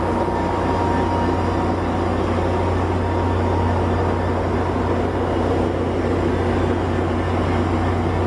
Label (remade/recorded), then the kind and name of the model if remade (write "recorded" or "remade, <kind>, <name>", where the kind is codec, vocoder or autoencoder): recorded